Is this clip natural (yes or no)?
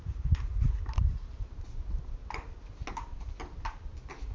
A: yes